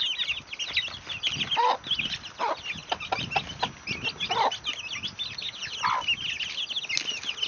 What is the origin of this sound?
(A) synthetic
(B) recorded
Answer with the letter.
B